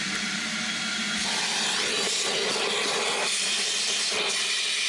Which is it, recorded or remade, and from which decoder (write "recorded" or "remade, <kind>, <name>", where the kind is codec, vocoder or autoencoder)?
recorded